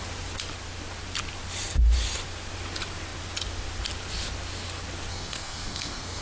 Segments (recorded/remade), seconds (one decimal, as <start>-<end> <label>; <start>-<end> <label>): 0.0-5.1 recorded; 5.1-6.2 remade